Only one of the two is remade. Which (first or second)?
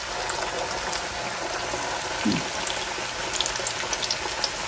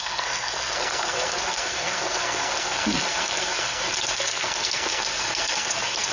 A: second